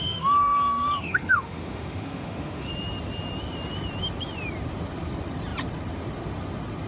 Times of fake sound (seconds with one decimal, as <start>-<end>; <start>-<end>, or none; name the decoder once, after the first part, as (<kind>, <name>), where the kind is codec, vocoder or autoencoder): 0.0-2.7 (autoencoder, DAC-VAE)